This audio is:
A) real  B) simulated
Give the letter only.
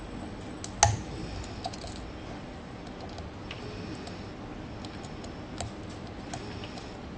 A